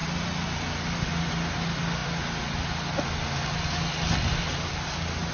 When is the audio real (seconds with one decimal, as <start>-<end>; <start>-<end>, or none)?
0.0-5.3